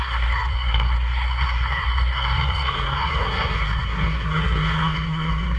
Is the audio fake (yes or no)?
yes